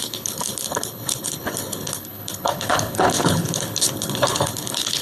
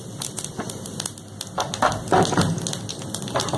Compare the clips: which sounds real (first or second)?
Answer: second